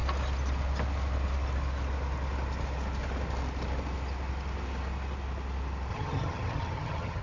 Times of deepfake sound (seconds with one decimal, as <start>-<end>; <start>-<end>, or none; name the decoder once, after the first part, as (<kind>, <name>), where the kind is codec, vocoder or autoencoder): 5.9-7.2 (vocoder, HiFi-GAN)